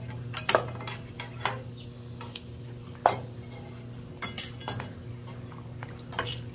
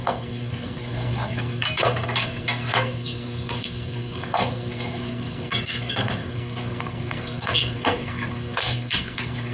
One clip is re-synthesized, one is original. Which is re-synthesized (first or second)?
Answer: second